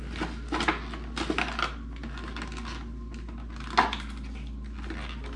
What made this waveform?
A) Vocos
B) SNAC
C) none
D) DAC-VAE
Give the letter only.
C